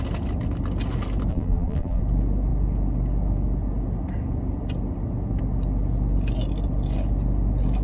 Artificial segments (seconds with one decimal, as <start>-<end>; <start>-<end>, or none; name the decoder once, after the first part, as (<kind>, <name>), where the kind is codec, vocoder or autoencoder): 1.3-2.0 (vocoder, BigVGAN v2)